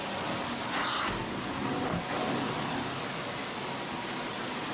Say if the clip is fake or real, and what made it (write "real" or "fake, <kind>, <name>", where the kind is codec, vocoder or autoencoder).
real